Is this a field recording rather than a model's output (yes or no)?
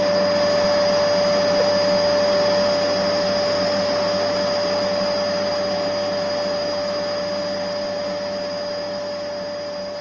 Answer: yes